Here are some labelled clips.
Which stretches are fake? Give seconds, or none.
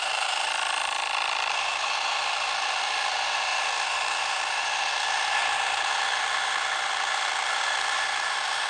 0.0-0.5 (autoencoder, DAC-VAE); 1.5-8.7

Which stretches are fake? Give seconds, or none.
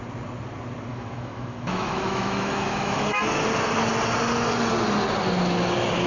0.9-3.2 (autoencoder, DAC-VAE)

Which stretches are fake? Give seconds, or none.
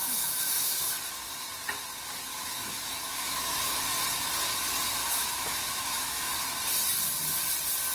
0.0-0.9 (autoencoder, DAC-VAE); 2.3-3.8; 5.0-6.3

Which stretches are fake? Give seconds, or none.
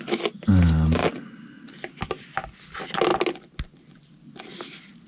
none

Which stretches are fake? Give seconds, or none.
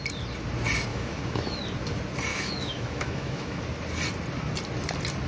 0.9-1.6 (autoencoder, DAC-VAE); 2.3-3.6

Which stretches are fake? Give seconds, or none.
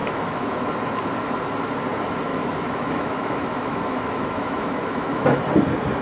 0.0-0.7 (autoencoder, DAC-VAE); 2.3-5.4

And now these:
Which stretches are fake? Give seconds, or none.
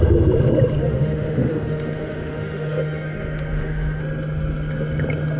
0.8-4.0 (autoencoder, DAC-VAE)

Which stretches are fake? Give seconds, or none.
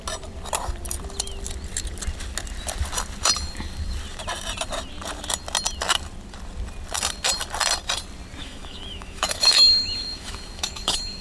8.4-11.2 (autoencoder, DAC-VAE)